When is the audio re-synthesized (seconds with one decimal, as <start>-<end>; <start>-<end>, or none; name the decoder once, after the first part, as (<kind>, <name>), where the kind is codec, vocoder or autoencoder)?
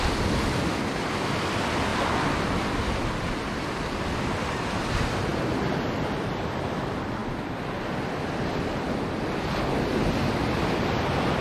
none